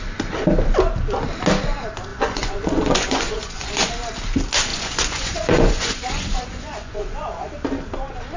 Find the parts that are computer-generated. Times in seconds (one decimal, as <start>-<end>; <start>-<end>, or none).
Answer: 2.1-3.9; 4.7-7.5